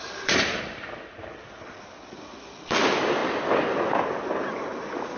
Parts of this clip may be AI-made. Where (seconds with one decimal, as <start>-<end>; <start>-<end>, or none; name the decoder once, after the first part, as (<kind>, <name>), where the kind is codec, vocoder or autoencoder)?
none